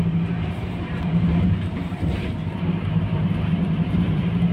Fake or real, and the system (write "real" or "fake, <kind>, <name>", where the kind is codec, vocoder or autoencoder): fake, vocoder, BigVGAN v2